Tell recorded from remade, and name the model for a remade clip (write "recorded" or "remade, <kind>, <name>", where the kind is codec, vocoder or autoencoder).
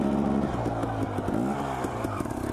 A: recorded